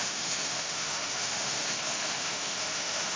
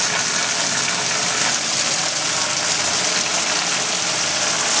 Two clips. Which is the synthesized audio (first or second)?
first